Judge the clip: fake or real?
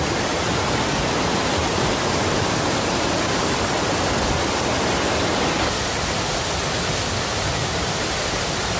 real